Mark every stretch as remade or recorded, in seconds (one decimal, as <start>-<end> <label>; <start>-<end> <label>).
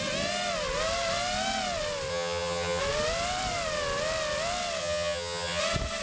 0.0-2.1 recorded; 2.1-2.8 remade; 2.8-4.8 recorded; 4.8-5.6 remade; 5.6-6.0 recorded